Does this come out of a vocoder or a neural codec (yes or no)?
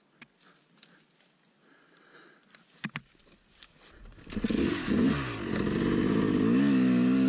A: no